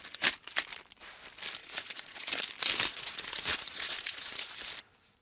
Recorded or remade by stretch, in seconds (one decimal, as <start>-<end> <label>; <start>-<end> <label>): 0.0-1.6 recorded; 1.6-2.3 remade; 2.3-2.9 recorded; 2.9-4.5 remade; 4.5-5.2 recorded